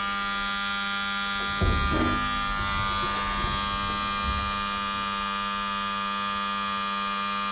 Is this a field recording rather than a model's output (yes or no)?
yes